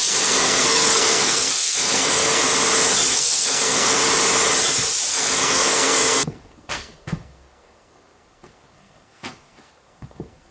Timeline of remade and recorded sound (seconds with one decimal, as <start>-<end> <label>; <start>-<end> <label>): 0.0-2.4 remade; 2.4-3.1 recorded; 3.1-4.0 remade; 4.0-5.1 recorded; 5.1-10.5 remade